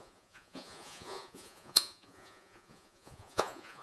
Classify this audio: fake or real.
fake